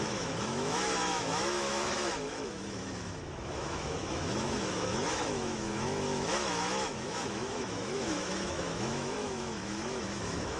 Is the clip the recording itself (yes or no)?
no